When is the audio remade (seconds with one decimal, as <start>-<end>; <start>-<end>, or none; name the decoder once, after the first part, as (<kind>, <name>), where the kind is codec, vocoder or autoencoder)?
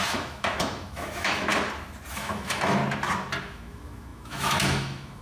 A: 0.0-1.5 (autoencoder, DAC-VAE); 2.1-2.8; 3.4-5.2